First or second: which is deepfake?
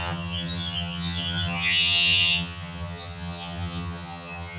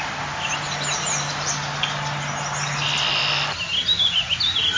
first